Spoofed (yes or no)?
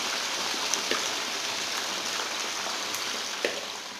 no